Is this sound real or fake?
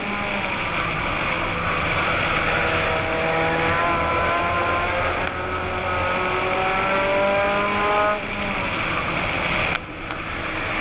real